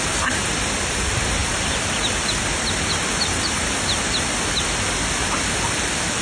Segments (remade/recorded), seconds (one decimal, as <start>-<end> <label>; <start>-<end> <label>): 0.0-6.2 recorded